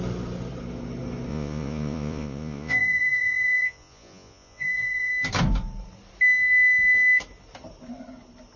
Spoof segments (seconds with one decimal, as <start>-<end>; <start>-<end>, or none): 1.3-5.1